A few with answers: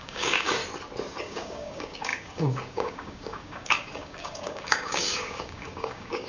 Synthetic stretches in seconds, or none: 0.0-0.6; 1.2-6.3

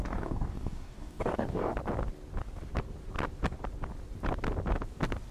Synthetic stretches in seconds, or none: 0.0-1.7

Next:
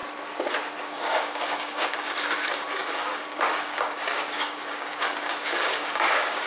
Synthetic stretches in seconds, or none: 0.8-6.5